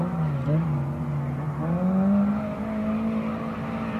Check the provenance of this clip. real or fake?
real